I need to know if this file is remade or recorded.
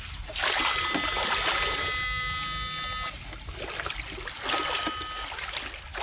recorded